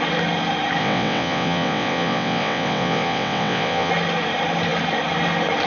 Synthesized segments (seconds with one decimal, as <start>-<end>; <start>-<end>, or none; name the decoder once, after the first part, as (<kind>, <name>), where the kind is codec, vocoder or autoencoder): 0.8-3.9 (vocoder, WaveNeXt)